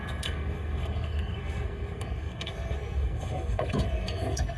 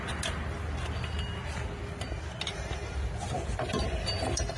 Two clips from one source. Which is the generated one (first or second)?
first